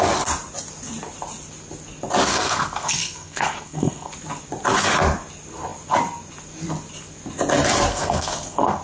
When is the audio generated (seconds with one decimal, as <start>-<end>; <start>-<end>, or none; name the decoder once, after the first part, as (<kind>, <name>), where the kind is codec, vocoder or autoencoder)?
2.3-4.1 (codec, SNAC); 7.9-8.8